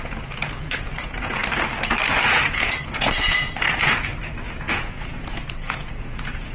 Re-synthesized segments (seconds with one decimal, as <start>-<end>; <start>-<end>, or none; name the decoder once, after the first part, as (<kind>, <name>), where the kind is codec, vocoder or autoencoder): 0.0-1.4 (vocoder, Vocos); 2.3-4.1; 4.7-6.5